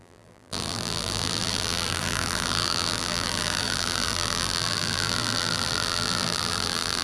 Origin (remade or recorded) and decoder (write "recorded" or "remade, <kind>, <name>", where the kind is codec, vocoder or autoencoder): remade, vocoder, BigVGAN v2